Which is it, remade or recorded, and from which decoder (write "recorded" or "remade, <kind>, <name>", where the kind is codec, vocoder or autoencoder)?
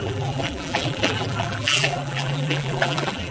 remade, vocoder, BigVGAN v2